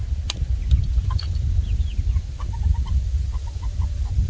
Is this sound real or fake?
real